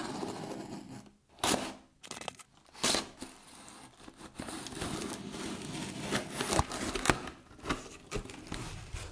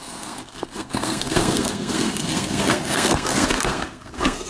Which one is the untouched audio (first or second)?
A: first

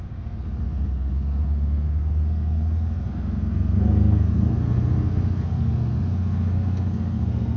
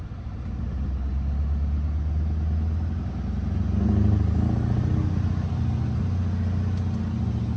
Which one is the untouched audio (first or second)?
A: second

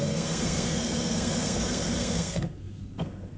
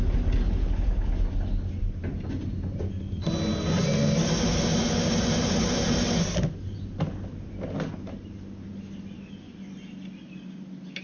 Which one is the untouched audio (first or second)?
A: second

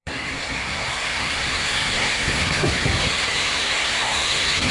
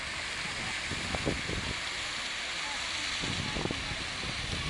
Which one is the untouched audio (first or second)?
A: second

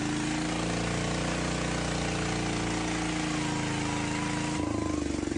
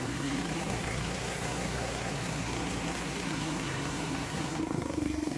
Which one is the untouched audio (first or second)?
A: first